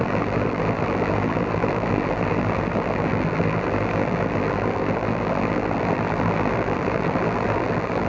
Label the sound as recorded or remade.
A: remade